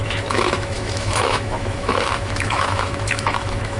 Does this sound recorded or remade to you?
remade